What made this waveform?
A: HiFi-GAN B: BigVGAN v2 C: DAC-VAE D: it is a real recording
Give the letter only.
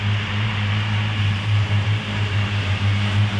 B